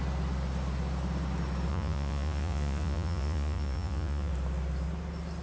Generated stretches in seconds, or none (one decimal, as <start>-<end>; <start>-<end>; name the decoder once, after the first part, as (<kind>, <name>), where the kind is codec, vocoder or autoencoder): 1.7-4.3 (vocoder, Vocos)